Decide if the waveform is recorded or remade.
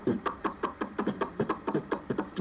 remade